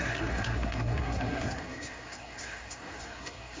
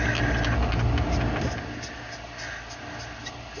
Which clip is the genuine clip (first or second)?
second